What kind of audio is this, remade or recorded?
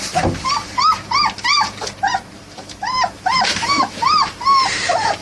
remade